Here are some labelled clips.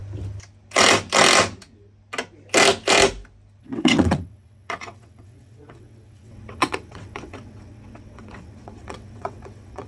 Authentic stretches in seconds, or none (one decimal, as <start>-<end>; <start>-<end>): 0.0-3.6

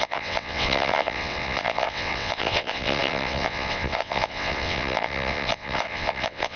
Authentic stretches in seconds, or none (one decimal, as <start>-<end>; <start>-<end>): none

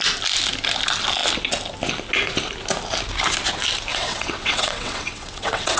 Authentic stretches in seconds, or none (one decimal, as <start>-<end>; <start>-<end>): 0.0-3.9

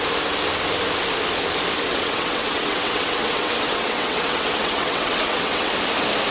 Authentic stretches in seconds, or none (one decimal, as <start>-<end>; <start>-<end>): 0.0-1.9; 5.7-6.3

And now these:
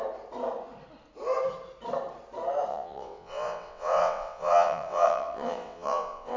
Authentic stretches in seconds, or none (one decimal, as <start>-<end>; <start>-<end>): 0.0-2.7

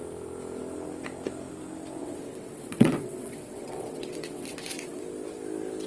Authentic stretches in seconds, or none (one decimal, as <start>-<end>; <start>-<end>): 0.0-2.0; 5.0-5.9

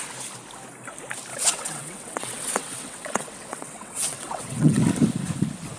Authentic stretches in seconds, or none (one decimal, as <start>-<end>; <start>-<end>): 0.0-1.3; 4.8-5.8

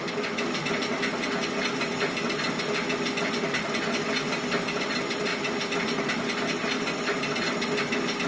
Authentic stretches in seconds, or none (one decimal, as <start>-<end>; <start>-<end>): 0.0-8.3